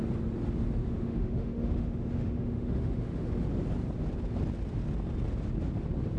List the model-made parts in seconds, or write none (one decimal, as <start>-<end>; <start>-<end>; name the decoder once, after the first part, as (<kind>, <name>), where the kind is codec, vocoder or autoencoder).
0.8-3.3 (autoencoder, DAC-VAE)